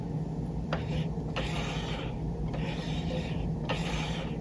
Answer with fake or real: real